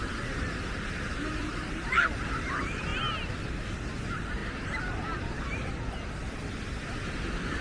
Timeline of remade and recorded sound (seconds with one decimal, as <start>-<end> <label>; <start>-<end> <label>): 0.0-1.7 remade; 1.7-2.9 recorded; 2.9-3.4 remade; 3.4-7.6 recorded